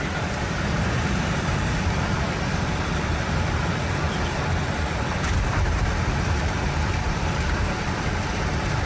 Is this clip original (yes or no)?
no